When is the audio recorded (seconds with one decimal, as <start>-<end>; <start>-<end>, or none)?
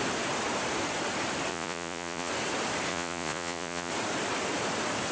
0.0-1.5; 2.3-2.9; 3.9-5.1